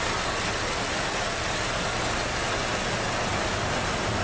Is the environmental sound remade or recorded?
recorded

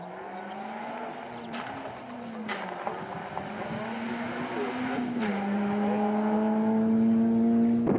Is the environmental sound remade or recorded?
recorded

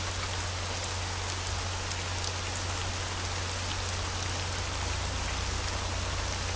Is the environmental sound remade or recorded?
recorded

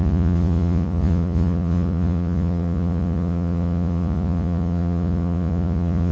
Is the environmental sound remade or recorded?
remade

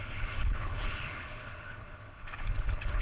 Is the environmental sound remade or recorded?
remade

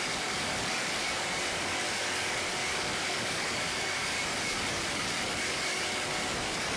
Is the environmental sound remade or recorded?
remade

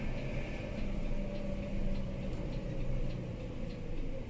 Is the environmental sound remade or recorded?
recorded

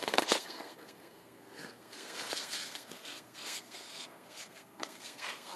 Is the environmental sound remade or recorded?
remade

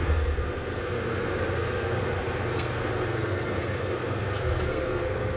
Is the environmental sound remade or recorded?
remade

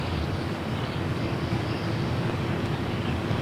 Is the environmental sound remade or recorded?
remade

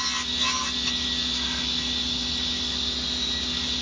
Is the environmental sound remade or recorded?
recorded